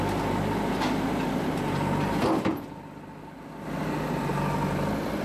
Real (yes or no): yes